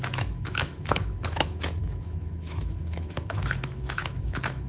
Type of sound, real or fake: fake